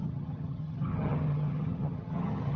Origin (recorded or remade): remade